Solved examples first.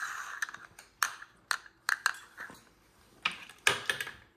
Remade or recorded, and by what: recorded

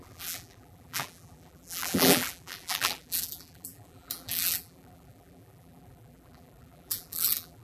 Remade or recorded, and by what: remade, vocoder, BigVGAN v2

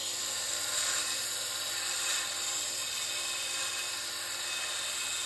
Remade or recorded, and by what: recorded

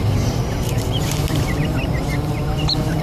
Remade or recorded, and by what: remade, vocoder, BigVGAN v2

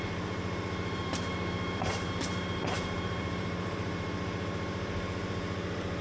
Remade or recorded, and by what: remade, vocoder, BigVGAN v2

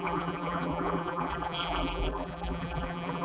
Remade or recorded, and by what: remade, vocoder, BigVGAN v2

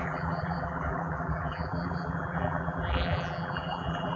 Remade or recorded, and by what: remade, vocoder, BigVGAN v2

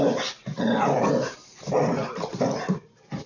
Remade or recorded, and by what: remade, vocoder, BigVGAN v2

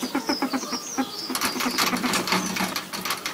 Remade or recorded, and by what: recorded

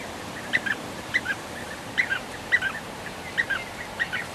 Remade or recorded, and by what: remade, vocoder, BigVGAN v2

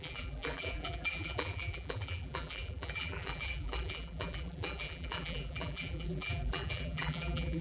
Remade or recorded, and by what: remade, vocoder, BigVGAN v2